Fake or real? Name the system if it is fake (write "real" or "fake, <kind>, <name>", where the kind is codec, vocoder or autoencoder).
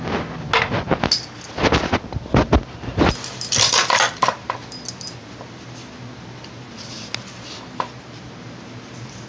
real